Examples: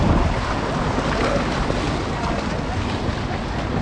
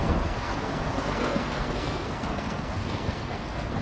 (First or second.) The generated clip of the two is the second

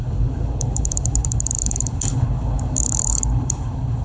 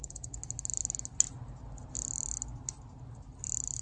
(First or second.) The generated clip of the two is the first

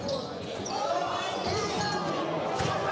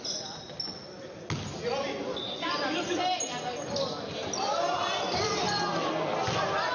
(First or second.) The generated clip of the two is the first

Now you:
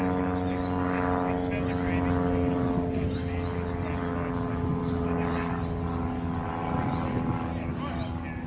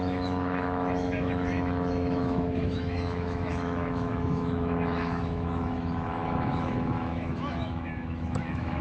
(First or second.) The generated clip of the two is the second